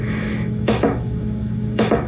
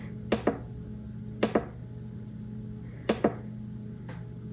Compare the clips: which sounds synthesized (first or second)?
first